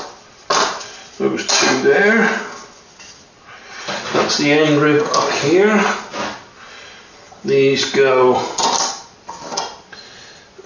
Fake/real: real